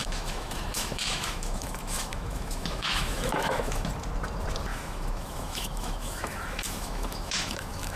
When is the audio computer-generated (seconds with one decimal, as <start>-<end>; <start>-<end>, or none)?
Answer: 0.0-3.9; 4.7-8.0